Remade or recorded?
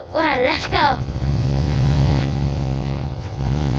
remade